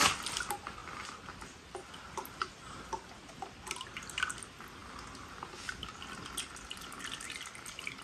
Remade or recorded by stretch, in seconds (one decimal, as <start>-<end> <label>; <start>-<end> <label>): 0.0-8.0 recorded